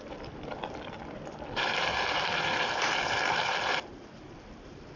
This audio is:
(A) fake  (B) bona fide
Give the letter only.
A